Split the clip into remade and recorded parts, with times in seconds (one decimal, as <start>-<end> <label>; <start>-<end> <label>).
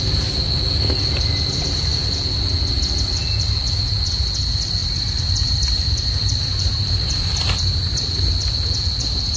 0.0-4.8 recorded; 4.8-8.3 remade; 8.3-9.4 recorded